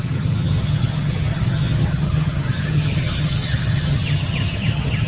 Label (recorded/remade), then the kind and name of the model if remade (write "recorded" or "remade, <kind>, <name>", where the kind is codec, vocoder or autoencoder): remade, vocoder, HiFi-GAN